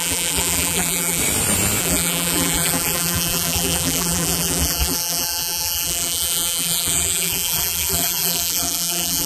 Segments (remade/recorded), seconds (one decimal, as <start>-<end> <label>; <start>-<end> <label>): 0.0-1.2 remade; 1.2-1.8 recorded; 1.8-9.3 remade